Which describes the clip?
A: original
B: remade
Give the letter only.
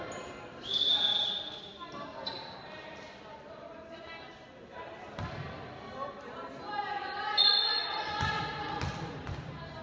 A